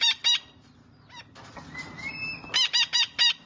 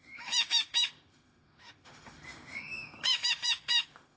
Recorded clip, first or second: first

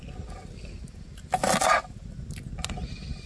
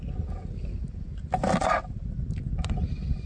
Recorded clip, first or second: first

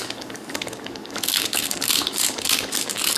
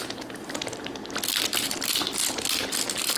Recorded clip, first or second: second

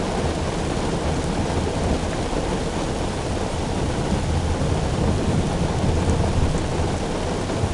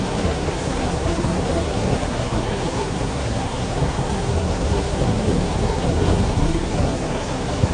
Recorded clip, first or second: first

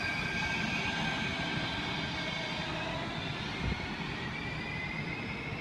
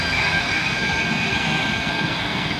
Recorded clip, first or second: first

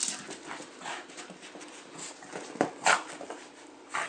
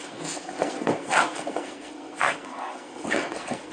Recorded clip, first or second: first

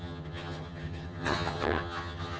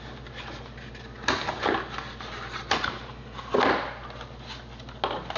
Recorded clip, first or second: second